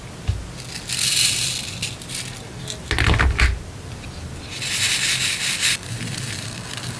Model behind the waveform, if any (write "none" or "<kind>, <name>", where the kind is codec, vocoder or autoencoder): none